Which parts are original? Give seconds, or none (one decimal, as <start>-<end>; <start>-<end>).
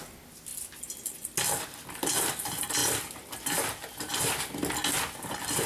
0.0-5.7